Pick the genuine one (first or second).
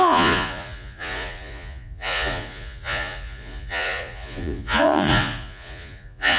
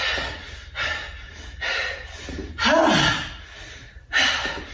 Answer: second